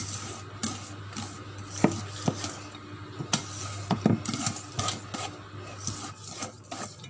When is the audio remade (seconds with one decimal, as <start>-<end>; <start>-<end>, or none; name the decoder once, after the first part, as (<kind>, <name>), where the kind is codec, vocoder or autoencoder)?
none